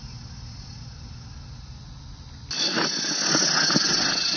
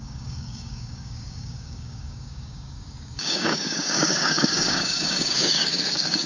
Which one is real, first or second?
first